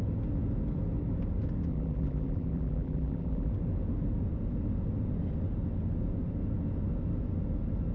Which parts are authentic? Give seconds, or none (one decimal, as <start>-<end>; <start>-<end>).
0.0-1.7; 3.5-7.9